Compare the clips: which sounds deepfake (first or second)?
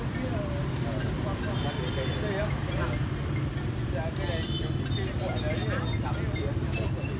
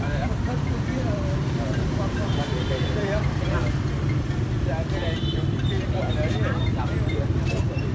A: second